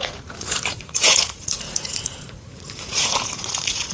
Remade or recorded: remade